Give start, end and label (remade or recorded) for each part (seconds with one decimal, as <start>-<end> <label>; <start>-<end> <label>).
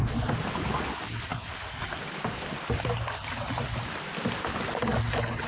0.0-5.5 recorded